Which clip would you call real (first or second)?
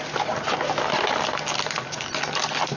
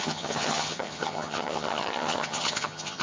first